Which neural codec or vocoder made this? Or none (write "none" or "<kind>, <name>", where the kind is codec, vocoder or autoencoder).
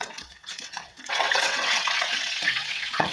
vocoder, WaveNeXt